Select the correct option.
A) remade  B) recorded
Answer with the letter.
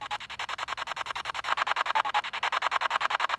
B